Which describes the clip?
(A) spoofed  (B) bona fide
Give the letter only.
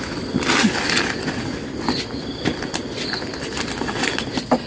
B